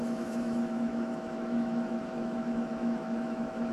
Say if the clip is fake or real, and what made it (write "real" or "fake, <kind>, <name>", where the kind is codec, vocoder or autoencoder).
fake, autoencoder, DAC-VAE